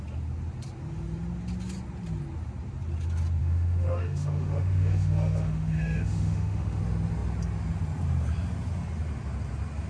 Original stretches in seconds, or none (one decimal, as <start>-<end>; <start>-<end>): 0.0-3.4; 6.8-9.9